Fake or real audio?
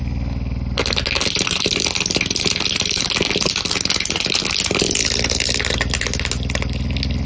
real